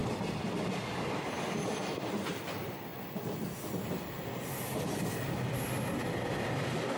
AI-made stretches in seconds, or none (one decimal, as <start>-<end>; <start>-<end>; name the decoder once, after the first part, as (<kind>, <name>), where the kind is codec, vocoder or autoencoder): 0.0-2.3 (vocoder, BigVGAN v2)